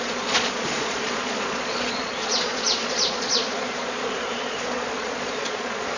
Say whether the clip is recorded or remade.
remade